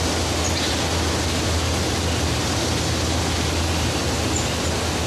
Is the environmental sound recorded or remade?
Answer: recorded